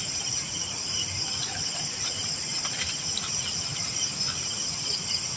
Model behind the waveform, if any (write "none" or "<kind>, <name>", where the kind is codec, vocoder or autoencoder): none